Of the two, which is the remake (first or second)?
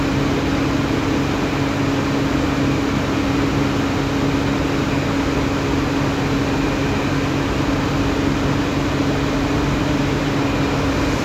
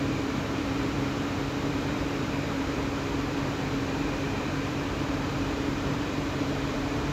second